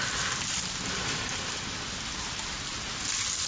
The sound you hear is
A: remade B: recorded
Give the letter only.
B